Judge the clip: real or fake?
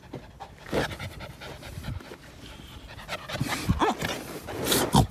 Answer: real